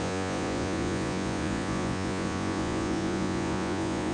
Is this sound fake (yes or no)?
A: yes